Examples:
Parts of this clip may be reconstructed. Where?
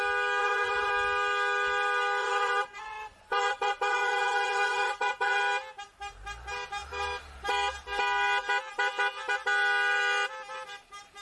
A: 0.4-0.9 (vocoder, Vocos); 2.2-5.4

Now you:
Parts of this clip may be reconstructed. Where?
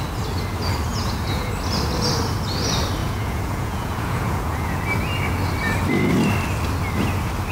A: 0.9-1.5 (vocoder, Vocos); 3.0-4.8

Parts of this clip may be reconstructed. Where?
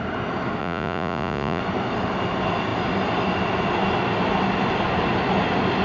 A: 0.6-1.6 (vocoder, Vocos)